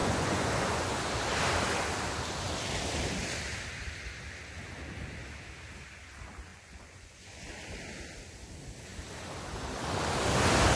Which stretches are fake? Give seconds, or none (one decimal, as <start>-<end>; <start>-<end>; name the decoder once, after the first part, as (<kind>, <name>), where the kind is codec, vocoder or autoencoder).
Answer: 0.0-1.0 (vocoder, Vocos); 6.5-7.5